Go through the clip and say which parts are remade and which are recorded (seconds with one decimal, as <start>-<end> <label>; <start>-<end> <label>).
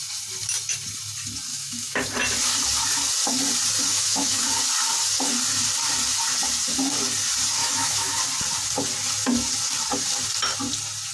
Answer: 0.0-1.5 recorded; 1.5-2.1 remade; 2.1-3.9 recorded; 3.9-4.5 remade; 4.5-7.6 recorded; 7.6-8.2 remade; 8.2-11.1 recorded